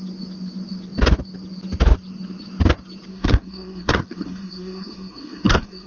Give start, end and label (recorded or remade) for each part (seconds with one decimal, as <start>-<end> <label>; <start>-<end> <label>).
0.0-3.1 recorded; 3.1-5.9 remade